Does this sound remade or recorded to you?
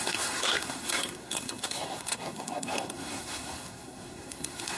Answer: remade